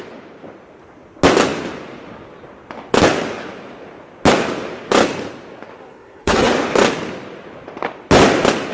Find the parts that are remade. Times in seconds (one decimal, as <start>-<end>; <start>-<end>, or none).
5.8-6.5